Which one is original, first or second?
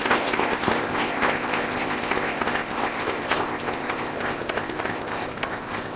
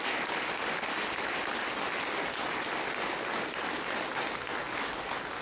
second